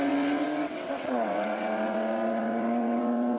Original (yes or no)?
no